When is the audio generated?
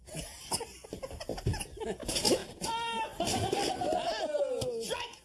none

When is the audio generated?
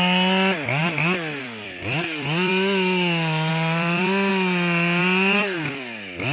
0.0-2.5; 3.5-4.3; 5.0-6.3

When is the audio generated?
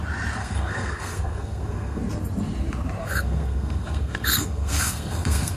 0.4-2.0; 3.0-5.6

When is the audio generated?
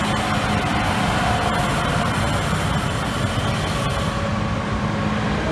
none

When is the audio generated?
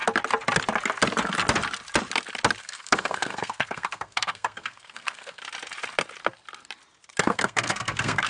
2.6-5.4; 7.2-8.3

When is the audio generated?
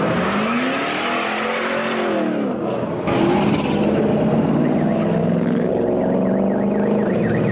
5.2-5.7